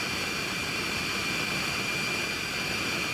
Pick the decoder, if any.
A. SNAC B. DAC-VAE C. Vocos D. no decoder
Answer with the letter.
D